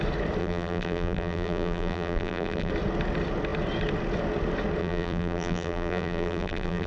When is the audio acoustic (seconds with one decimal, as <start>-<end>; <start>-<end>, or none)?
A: 0.0-0.4; 2.7-4.8